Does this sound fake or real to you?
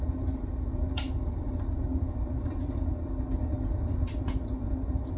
real